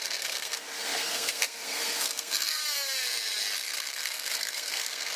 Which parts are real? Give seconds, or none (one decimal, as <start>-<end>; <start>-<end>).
2.6-3.9